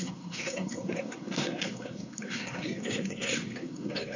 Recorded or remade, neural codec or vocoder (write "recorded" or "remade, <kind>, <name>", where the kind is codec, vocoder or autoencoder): remade, codec, SNAC